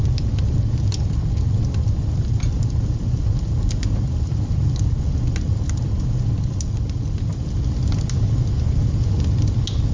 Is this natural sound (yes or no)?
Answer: yes